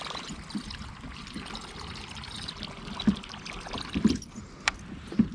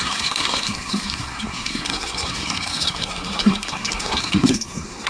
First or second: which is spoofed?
second